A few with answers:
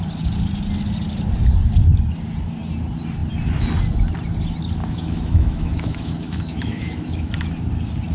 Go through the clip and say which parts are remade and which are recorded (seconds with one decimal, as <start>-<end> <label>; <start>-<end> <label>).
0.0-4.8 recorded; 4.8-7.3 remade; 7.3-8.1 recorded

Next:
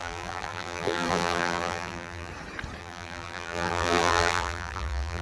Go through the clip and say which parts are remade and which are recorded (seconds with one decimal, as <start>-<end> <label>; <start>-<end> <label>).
0.0-2.3 remade; 2.3-2.8 recorded; 2.8-5.2 remade

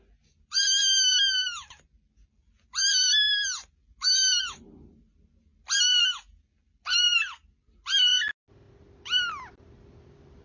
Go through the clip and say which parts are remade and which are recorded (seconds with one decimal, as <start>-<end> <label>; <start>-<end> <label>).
0.0-10.4 recorded

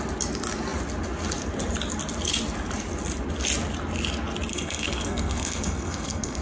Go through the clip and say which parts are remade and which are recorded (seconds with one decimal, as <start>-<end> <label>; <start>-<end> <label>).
0.0-4.5 recorded; 4.5-6.4 remade

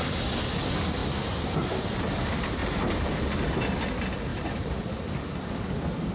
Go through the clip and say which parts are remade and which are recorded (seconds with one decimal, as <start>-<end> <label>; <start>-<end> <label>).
0.0-1.0 recorded; 1.0-2.0 remade; 2.0-2.6 recorded; 2.6-3.5 remade; 3.5-4.3 recorded; 4.3-5.3 remade; 5.3-6.1 recorded

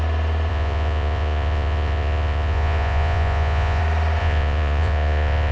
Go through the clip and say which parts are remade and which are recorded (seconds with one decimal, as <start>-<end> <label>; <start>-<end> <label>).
0.0-0.5 recorded; 0.5-3.8 remade; 3.8-4.2 recorded; 4.2-5.5 remade

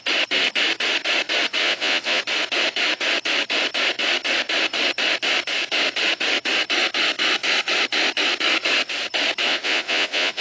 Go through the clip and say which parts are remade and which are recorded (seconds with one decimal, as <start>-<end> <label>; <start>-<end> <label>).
0.0-1.6 recorded; 1.6-2.2 remade; 2.2-9.5 recorded; 9.5-10.4 remade